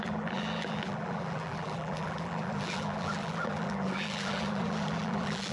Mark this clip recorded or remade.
remade